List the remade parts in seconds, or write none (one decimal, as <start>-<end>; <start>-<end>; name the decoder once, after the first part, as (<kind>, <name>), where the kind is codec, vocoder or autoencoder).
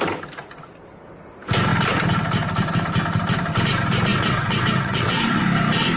4.1-5.4 (vocoder, WaveNeXt)